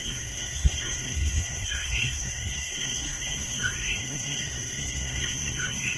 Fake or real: fake